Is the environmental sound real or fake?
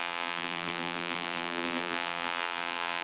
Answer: fake